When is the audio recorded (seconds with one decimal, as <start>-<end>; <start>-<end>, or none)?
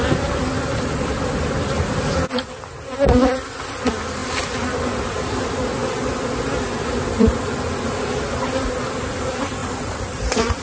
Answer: 0.0-9.6